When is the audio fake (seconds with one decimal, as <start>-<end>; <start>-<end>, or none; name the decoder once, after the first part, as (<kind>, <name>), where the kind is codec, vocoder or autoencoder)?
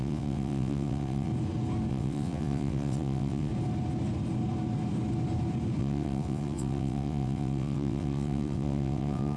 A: 0.0-1.3 (vocoder, WaveNeXt); 1.9-3.5; 5.8-9.4